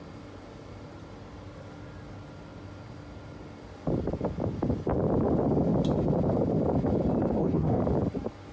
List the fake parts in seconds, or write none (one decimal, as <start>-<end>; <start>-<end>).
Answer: 7.3-7.8